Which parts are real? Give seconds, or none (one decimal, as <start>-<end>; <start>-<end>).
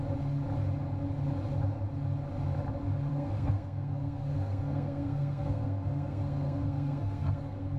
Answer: 0.0-3.1